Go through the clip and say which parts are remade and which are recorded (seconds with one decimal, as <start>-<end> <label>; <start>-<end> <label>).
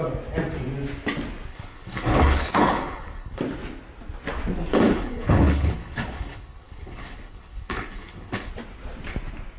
0.0-1.5 recorded; 1.5-3.4 remade; 3.4-4.7 recorded; 4.7-8.5 remade; 8.5-9.6 recorded